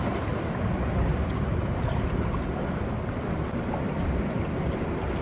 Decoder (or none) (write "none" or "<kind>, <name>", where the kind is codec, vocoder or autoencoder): none